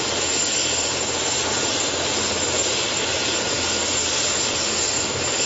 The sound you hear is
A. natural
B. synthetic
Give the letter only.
A